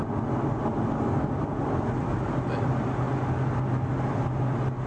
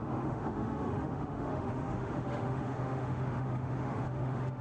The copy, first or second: second